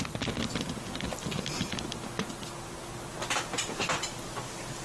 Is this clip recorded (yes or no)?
yes